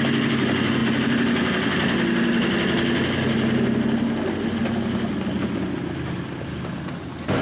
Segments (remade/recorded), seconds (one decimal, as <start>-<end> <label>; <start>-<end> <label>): 0.0-7.4 recorded